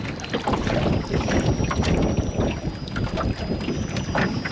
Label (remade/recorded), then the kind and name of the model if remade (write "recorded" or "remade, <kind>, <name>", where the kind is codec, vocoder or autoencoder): recorded